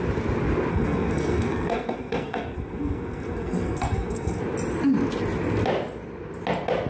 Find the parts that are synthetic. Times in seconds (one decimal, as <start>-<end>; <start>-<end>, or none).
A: 0.7-4.4